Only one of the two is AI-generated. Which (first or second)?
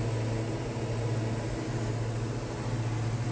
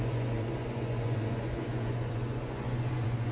second